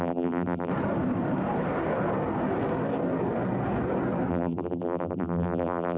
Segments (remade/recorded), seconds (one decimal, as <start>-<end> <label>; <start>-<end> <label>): 0.0-0.7 remade; 0.7-4.3 recorded; 4.3-6.0 remade

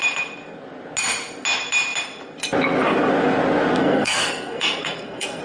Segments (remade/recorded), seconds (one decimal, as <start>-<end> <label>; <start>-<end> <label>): 0.0-3.8 recorded; 3.8-5.4 remade

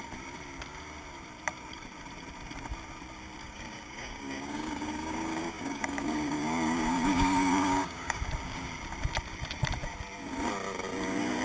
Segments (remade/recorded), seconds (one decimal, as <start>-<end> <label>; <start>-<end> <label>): 0.0-3.4 recorded; 3.4-8.2 remade; 8.2-11.4 recorded

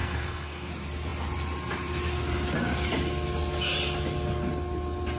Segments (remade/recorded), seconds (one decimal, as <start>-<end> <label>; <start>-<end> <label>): 0.0-0.7 remade; 0.7-5.2 recorded